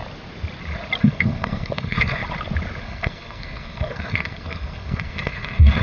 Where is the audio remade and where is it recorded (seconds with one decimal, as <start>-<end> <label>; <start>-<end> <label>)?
0.0-1.0 recorded; 1.0-2.2 remade; 2.2-2.8 recorded; 2.8-5.8 remade